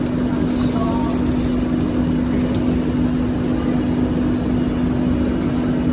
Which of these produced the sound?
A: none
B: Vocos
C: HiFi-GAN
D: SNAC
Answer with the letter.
A